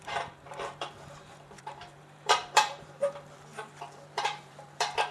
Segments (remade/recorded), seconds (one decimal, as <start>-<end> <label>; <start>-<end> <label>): 0.0-5.1 remade